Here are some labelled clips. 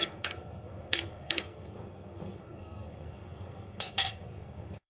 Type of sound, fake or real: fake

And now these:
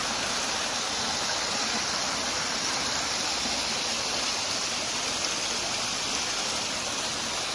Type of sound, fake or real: real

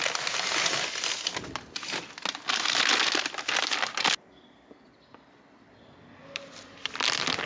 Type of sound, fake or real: real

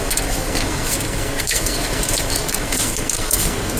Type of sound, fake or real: fake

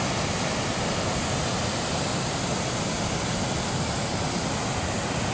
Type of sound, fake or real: real